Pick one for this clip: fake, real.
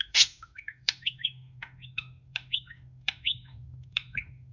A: fake